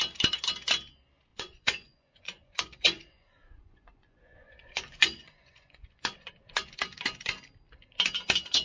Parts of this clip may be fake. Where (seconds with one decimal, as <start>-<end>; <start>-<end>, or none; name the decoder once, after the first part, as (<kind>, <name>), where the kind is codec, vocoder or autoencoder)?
1.3-6.3 (vocoder, Vocos)